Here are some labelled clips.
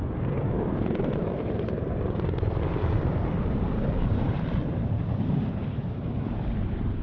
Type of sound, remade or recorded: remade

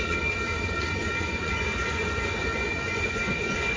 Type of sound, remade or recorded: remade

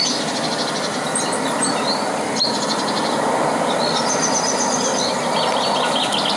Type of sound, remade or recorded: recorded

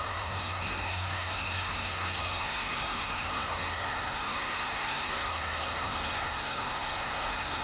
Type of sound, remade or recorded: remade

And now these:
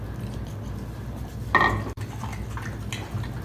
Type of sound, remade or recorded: recorded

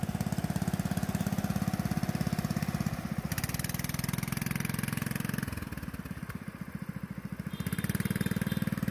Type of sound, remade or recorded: recorded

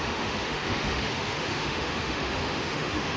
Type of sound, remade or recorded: remade